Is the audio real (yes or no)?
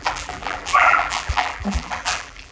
no